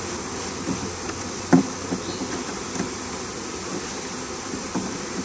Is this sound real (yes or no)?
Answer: no